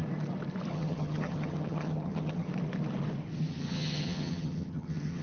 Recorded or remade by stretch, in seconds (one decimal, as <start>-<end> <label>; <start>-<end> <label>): 0.0-0.7 recorded; 0.7-2.5 remade; 2.5-3.5 recorded; 3.5-5.2 remade